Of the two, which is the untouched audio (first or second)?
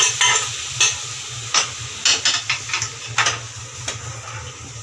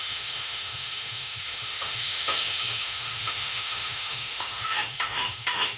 first